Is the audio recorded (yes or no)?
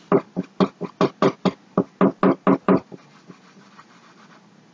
yes